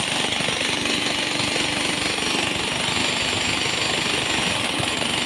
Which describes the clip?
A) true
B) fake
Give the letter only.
A